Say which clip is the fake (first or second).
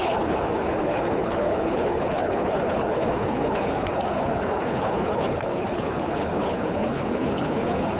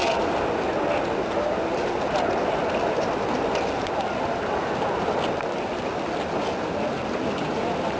first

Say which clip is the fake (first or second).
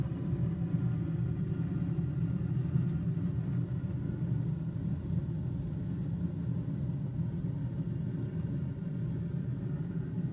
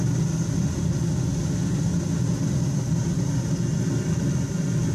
first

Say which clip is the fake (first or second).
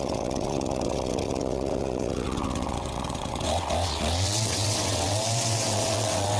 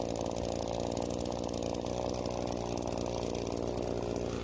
first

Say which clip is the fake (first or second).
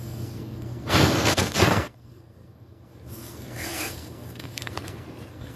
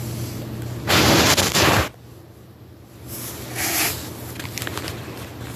first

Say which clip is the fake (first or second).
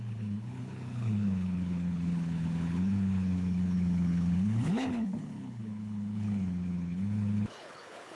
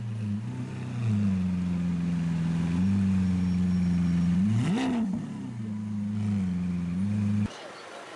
first